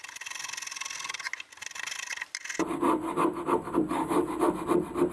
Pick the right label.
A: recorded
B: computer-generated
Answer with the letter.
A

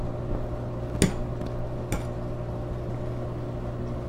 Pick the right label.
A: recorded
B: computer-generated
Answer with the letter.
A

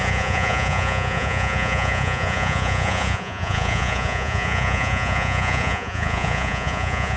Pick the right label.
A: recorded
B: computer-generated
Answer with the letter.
B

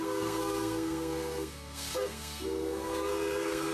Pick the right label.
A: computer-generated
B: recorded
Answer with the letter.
A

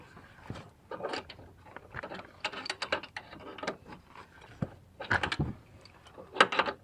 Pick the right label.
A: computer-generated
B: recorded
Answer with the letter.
B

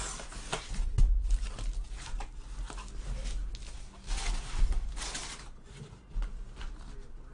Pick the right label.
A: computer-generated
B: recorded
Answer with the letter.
B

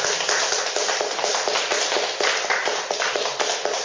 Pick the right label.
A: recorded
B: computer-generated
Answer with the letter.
A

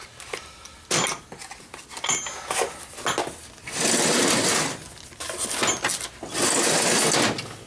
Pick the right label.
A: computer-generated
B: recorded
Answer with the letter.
B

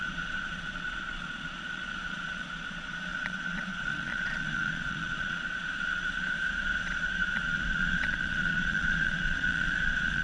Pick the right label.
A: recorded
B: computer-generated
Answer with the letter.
B